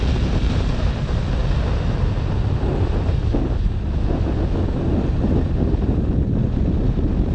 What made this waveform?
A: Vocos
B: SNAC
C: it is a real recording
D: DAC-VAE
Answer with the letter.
C